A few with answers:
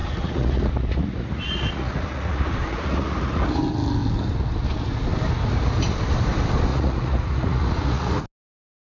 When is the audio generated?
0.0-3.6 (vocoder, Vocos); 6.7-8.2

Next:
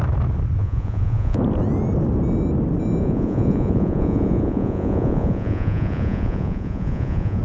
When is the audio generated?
0.6-1.4 (vocoder, Vocos); 3.0-7.4

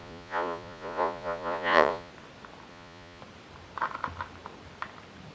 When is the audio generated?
0.0-2.1 (vocoder, Vocos); 2.7-3.2

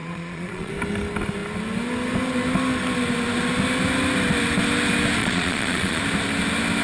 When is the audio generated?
0.0-0.7 (vocoder, Vocos); 5.2-6.0

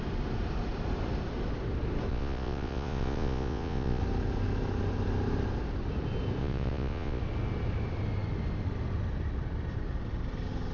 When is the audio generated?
2.1-4.0 (vocoder, Vocos); 6.4-7.2

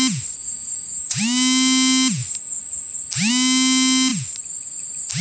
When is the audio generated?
0.4-1.2 (vocoder, Vocos)

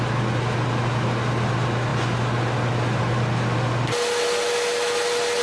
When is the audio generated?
none

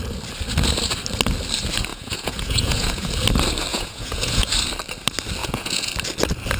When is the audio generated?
1.9-3.1 (vocoder, Vocos); 3.7-4.5; 5.4-5.9